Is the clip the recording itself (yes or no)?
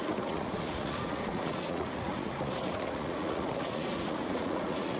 no